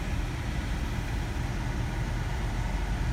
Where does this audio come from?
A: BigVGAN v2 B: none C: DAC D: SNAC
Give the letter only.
B